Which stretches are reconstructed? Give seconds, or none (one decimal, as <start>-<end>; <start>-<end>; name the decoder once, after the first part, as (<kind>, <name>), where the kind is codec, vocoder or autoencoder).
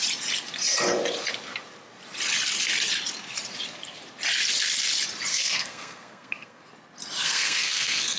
5.3-6.6 (codec, SNAC); 7.2-8.2